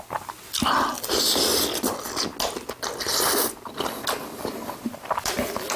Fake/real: real